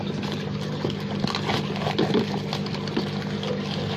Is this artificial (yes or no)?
no